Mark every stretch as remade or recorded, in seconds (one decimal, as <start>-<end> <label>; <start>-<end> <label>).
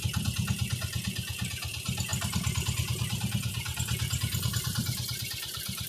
0.0-5.9 recorded